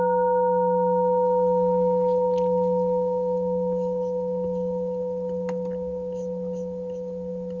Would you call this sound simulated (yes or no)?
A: no